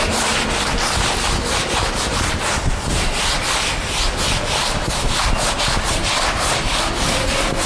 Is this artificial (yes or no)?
no